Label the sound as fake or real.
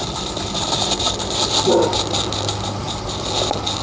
real